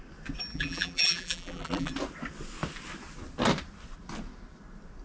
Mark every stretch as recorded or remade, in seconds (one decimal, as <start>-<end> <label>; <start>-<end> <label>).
0.0-0.5 recorded; 0.5-1.9 remade; 1.9-5.0 recorded